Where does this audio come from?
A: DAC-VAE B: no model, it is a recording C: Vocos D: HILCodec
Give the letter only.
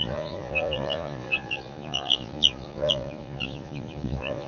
C